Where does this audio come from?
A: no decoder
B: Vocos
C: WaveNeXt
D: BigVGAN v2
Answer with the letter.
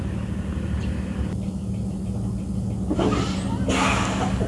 A